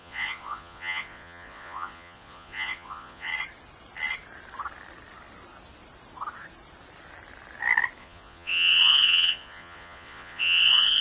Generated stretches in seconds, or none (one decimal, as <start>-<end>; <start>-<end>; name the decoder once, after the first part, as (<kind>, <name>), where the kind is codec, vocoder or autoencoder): 0.0-3.3 (vocoder, Vocos); 8.0-11.0